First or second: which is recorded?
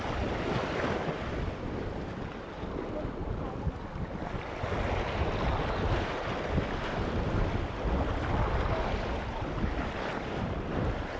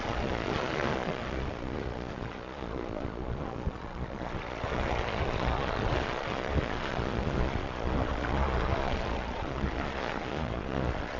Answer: first